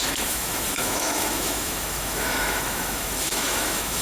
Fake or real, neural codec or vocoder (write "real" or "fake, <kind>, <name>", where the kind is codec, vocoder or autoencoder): fake, autoencoder, DAC-VAE